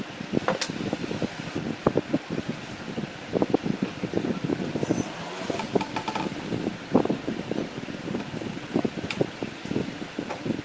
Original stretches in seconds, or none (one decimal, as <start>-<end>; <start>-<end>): 0.0-1.8; 4.7-5.7